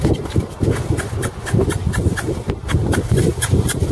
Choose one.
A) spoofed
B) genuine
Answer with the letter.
B